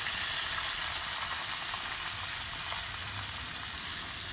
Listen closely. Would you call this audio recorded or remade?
recorded